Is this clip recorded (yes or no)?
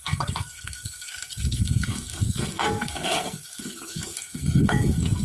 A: no